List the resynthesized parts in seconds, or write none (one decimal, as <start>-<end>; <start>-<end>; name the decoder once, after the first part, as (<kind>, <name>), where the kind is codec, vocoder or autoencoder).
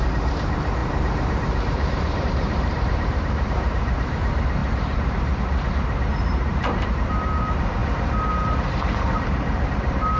0.0-7.8 (vocoder, BigVGAN v2); 8.3-10.2